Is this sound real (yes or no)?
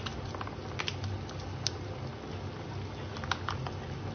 yes